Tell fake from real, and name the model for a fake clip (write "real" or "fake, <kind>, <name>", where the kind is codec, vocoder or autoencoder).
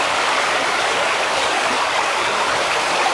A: fake, codec, DAC